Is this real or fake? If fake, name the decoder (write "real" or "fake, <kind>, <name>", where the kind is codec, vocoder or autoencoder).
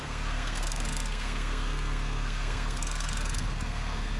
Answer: fake, codec, SNAC